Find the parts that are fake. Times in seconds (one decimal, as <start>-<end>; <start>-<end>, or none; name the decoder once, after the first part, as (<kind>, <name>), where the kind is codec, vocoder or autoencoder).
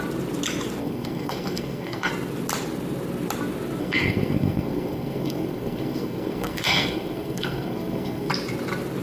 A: 0.8-2.1 (codec, SNAC); 3.8-8.3